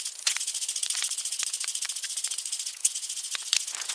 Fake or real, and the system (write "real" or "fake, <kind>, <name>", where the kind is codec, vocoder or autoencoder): fake, vocoder, Vocos